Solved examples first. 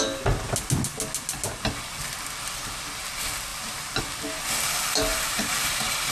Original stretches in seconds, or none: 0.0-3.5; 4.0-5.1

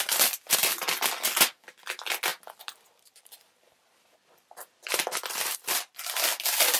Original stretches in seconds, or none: 0.0-2.3; 5.9-6.8

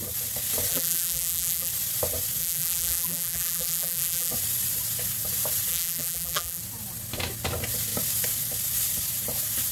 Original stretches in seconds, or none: 0.0-0.7; 1.7-2.4; 4.3-5.7; 6.6-9.7

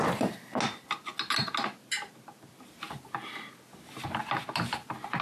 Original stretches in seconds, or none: 0.0-5.2